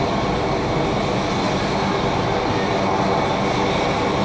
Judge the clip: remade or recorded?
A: recorded